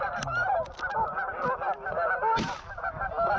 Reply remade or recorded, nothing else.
recorded